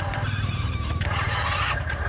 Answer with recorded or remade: remade